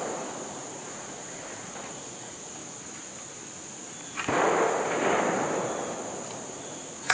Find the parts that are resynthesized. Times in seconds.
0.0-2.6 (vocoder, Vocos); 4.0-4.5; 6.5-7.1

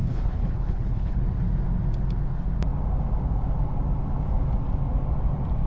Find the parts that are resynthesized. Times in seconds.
0.0-1.2 (codec, HILCodec)

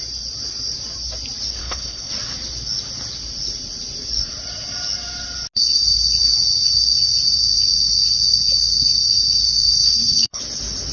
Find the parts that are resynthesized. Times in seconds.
1.6-2.1 (codec, HILCodec); 9.8-10.4

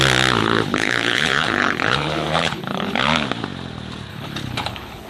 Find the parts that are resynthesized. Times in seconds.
0.4-3.0 (codec, HILCodec); 4.1-5.1